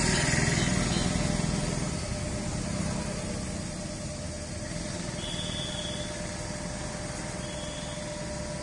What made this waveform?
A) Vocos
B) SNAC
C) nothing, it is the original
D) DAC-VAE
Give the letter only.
C